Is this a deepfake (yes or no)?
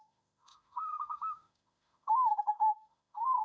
yes